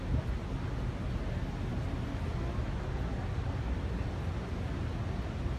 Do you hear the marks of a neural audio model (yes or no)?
no